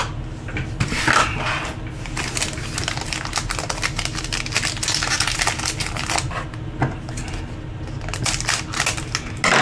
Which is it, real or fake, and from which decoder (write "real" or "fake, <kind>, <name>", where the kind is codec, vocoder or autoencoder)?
real